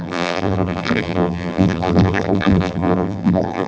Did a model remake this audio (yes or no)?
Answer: yes